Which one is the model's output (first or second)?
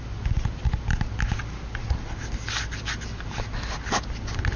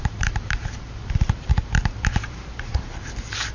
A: second